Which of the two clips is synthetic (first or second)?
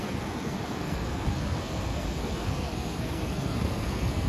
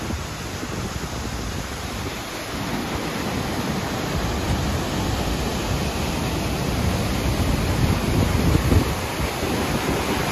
first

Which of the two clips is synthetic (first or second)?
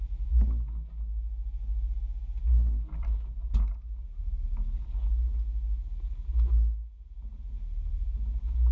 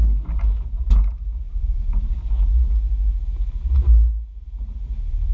second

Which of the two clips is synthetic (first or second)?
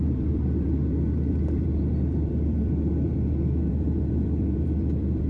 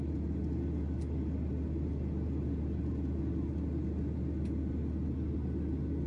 first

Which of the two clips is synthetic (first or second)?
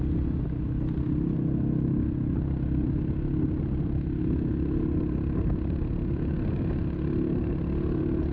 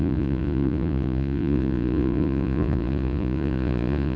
second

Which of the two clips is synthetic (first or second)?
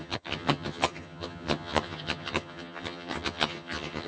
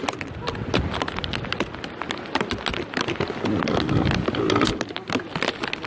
first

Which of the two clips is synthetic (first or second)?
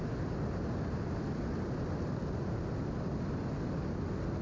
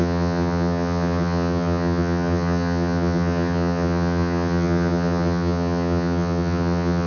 second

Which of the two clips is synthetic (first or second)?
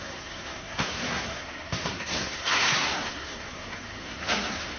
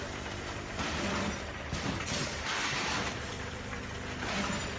first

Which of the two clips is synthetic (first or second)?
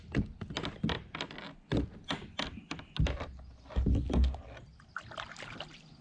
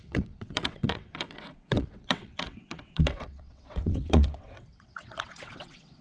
second